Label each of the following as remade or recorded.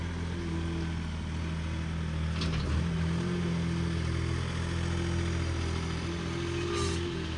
recorded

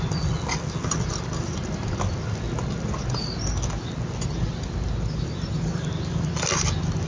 recorded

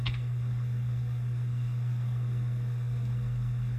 remade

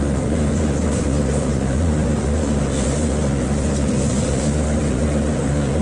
remade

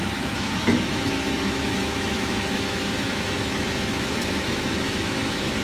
remade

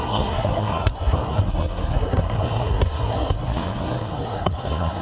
remade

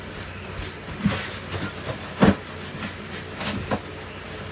recorded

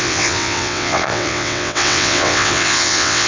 remade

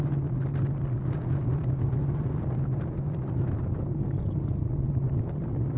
recorded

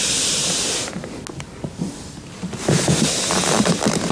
recorded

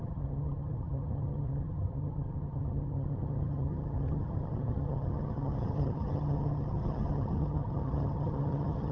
remade